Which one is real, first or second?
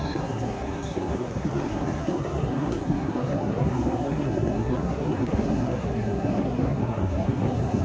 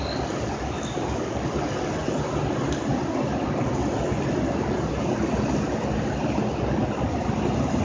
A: second